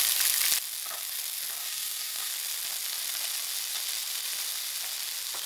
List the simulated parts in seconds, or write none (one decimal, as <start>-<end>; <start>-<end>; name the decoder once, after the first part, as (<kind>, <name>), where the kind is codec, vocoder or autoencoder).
1.6-2.3 (codec, DAC)